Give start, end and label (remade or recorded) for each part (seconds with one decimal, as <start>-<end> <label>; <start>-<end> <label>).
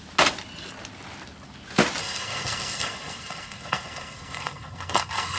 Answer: 0.0-2.0 recorded; 2.0-5.4 remade